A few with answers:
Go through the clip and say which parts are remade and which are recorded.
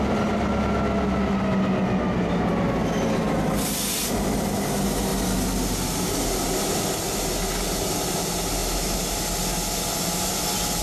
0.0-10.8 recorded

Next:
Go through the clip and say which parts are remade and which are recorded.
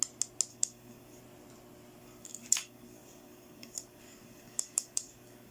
0.0-0.5 recorded; 0.5-1.2 remade; 1.2-2.0 recorded; 2.0-5.5 remade